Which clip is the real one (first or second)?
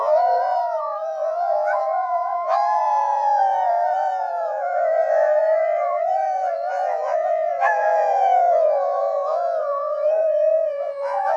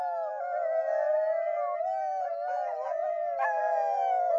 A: second